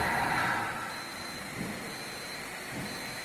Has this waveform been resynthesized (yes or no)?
no